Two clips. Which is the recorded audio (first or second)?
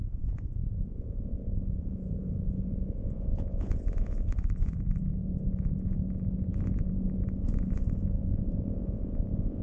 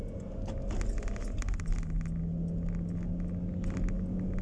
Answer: second